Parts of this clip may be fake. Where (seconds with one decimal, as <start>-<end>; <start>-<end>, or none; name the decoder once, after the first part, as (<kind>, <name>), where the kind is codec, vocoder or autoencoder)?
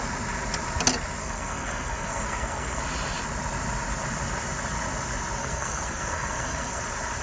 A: 1.2-2.8 (codec, SNAC); 5.4-6.8